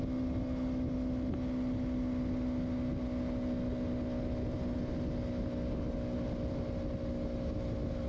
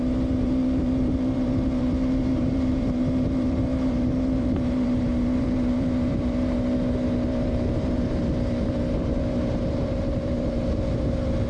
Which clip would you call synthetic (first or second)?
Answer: second